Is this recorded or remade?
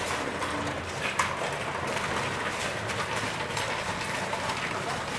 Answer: recorded